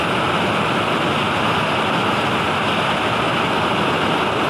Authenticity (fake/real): real